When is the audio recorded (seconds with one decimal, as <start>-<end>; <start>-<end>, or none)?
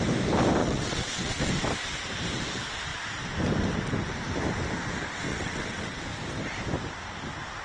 0.0-0.6; 1.5-5.3; 6.0-7.6